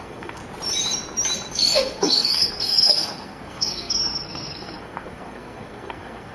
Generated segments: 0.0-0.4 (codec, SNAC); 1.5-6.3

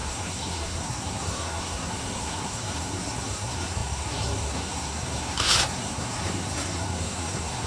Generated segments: 0.0-7.7 (codec, SNAC)

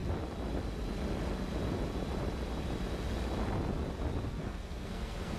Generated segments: 4.4-5.4 (codec, SNAC)

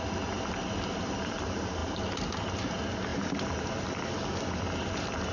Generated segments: none